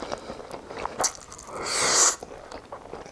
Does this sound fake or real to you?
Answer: real